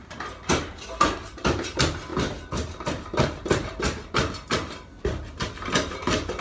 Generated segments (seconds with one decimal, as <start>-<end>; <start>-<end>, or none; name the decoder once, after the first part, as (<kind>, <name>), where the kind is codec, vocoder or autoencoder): 0.0-0.7 (vocoder, BigVGAN v2)